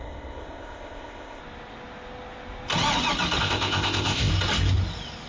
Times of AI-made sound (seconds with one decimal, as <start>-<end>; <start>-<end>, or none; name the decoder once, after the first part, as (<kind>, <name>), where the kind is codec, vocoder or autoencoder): 0.0-1.4 (codec, ZipCodec); 3.4-4.3